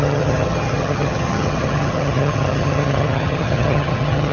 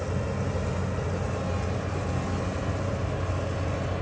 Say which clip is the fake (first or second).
first